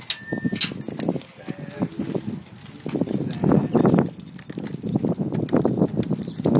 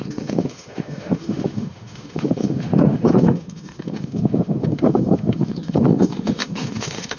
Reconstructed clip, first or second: second